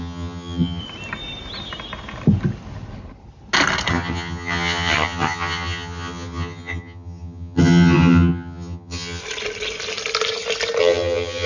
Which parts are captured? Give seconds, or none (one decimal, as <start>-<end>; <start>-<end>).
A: 0.8-3.9; 9.2-10.8